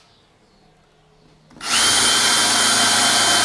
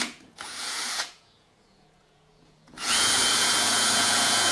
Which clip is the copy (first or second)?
second